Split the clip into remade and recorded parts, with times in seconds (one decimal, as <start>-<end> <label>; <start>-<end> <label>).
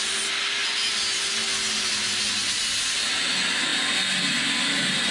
0.0-5.1 recorded